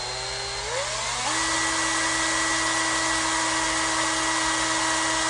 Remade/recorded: recorded